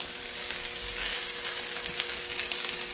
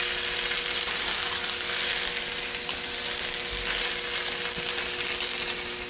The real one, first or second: second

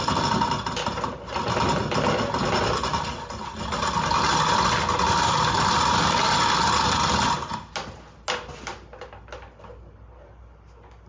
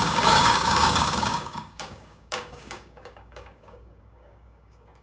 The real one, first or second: first